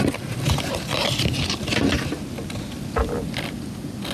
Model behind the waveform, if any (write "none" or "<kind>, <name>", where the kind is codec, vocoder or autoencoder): none